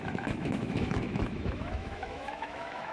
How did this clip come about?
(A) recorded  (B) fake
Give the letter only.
B